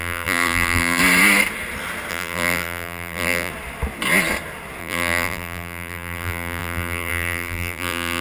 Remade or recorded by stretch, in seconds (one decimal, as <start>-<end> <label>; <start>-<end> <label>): 0.0-1.0 remade; 1.0-2.1 recorded; 2.1-3.5 remade; 3.5-4.8 recorded; 4.8-8.2 remade